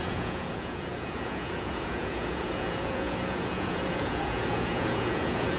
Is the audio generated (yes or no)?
yes